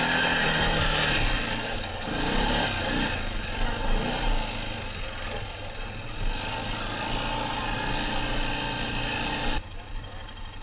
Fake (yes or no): no